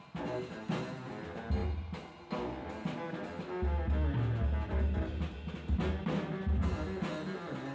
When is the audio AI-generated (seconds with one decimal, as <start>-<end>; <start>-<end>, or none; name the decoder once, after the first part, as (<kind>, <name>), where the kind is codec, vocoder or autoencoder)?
none